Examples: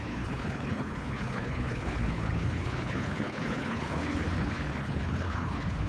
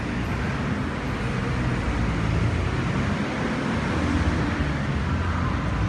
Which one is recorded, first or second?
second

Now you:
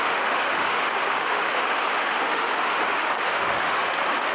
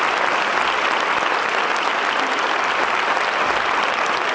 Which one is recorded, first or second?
second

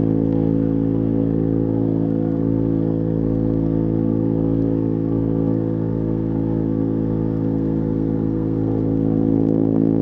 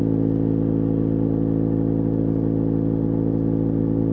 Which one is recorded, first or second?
second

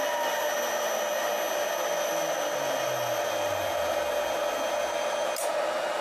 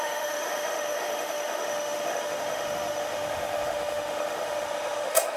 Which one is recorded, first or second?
first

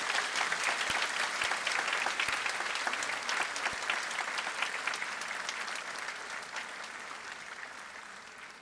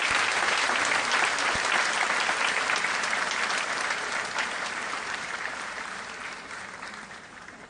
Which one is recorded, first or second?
first